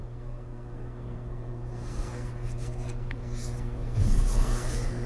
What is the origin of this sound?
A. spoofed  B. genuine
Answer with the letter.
A